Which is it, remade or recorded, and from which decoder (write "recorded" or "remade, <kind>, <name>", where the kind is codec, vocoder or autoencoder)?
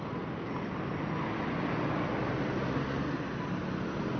recorded